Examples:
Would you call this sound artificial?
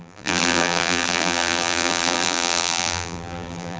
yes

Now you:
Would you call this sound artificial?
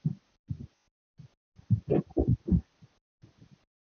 no